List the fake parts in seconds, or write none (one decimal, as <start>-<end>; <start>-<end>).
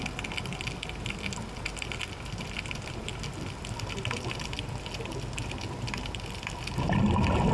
none